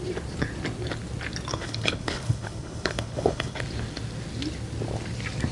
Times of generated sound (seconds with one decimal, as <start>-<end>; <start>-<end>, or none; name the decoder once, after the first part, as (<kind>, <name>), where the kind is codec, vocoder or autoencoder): 1.5-3.6 (codec, HILCodec)